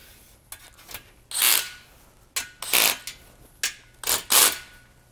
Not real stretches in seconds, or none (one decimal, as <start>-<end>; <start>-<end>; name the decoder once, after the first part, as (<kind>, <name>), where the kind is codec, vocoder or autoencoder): none